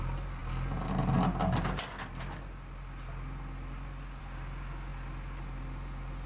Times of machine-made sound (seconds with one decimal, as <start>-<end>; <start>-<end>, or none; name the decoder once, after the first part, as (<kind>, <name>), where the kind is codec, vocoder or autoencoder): none